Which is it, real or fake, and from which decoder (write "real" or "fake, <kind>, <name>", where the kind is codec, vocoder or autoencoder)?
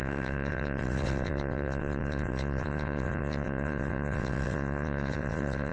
fake, vocoder, WaveNeXt